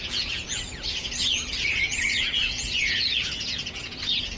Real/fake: fake